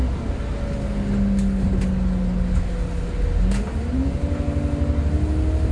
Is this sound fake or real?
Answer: real